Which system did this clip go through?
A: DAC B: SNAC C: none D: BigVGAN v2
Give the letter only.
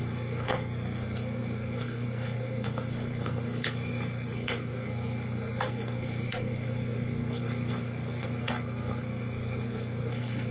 B